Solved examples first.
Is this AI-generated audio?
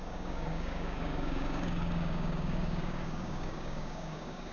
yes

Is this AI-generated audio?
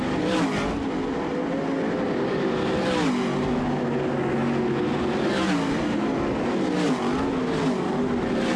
no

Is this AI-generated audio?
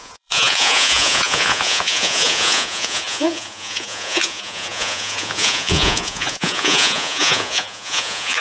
yes